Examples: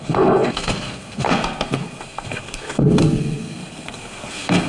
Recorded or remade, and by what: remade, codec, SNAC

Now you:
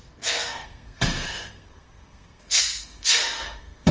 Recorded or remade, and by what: remade, codec, SNAC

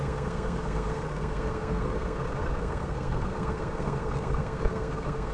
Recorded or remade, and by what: remade, codec, SNAC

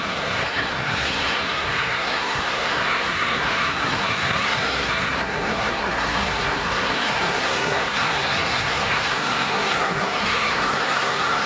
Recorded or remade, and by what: remade, codec, SNAC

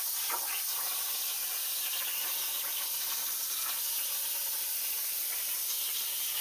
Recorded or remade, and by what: recorded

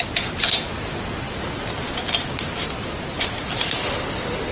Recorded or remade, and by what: recorded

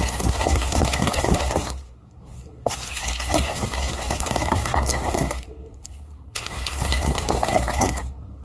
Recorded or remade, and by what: remade, codec, SNAC